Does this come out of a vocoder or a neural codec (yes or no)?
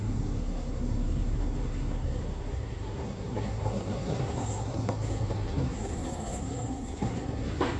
yes